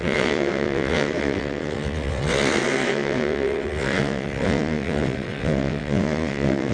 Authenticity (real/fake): fake